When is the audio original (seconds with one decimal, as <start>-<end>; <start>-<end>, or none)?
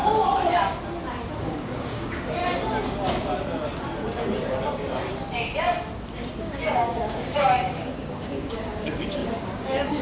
0.0-1.4; 2.4-6.4